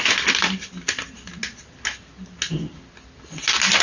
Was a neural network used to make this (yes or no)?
no